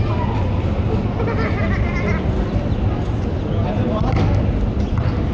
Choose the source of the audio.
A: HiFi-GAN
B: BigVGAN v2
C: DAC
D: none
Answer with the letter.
D